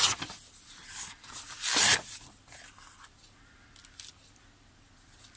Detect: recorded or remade recorded